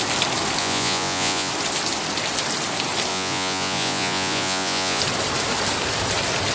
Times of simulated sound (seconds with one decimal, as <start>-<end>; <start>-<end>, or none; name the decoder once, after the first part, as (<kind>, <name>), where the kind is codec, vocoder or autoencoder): 0.6-1.5 (vocoder, Vocos); 3.1-5.0